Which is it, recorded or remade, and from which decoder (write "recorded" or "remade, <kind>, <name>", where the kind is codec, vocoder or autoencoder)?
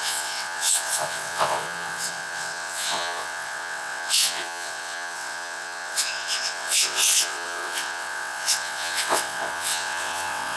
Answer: remade, vocoder, WaveNeXt